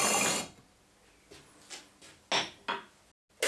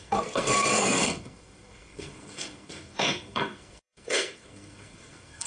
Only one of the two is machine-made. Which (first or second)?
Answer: second